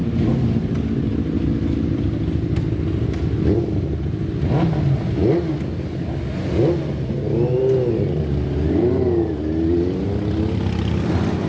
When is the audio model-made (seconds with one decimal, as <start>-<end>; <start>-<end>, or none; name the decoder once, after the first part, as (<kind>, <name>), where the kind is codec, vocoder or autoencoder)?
none